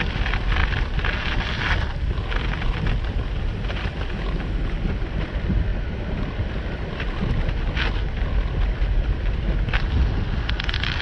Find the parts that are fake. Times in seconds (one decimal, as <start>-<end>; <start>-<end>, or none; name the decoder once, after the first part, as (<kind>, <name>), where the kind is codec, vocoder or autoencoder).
none